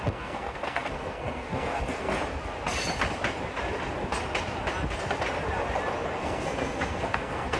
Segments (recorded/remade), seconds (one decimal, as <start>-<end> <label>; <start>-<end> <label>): 0.0-2.1 remade; 2.1-6.2 recorded; 6.2-7.6 remade